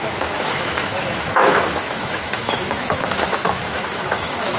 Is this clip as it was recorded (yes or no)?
no